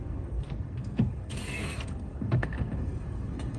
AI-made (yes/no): yes